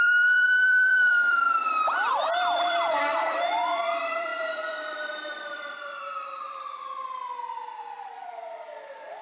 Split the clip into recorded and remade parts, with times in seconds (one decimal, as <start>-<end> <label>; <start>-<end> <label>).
0.0-9.2 remade